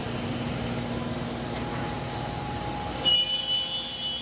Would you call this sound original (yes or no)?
yes